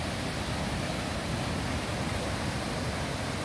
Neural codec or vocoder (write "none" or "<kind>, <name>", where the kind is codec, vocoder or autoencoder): none